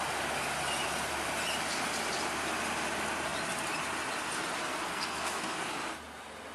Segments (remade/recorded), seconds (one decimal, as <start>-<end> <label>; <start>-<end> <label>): 0.0-4.6 recorded; 4.6-5.7 remade; 5.7-6.5 recorded